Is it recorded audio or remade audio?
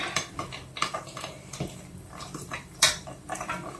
remade